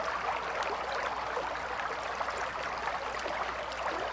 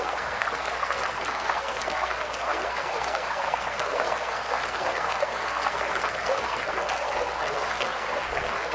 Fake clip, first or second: second